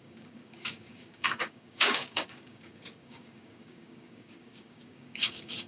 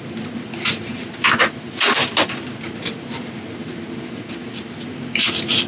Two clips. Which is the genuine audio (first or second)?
second